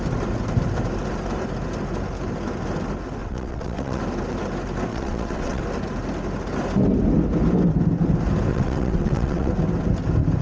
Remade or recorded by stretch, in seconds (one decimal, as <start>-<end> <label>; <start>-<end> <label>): 0.0-3.2 recorded; 3.2-4.0 remade; 4.0-4.9 recorded; 4.9-5.6 remade; 5.6-8.5 recorded; 8.5-9.5 remade; 9.5-10.4 recorded